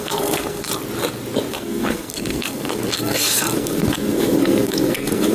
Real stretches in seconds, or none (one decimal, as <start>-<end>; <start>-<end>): 0.7-1.5